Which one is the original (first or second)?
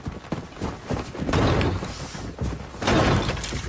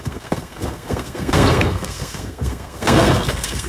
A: first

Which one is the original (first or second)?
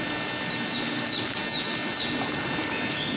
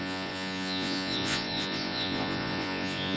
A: first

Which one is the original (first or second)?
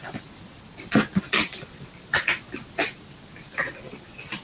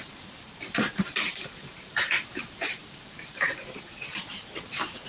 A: first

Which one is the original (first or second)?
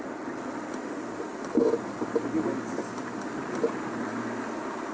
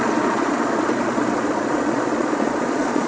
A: first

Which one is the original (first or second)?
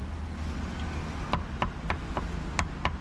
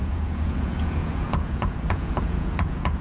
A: first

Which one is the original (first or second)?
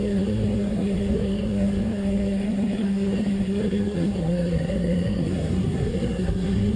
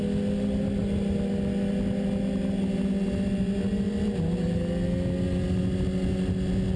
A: second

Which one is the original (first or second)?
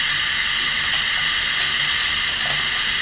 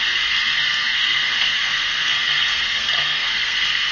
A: first